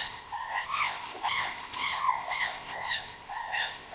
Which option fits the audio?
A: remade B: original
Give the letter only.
A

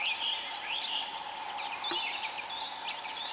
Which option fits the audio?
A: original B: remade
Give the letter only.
A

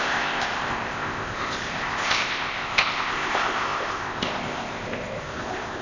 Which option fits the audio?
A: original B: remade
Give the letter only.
B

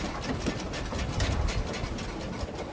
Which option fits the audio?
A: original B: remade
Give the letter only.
A